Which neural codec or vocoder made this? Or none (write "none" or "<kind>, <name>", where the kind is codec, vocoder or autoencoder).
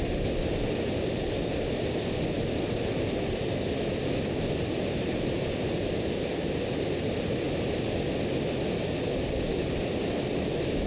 none